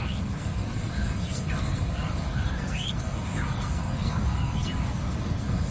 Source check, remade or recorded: remade